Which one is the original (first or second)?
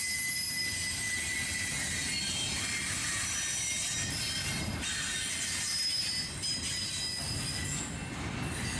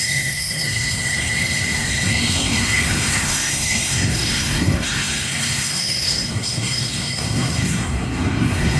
first